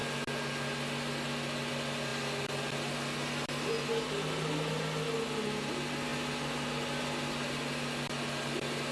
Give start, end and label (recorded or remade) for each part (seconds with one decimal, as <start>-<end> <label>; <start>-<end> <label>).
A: 0.0-8.9 recorded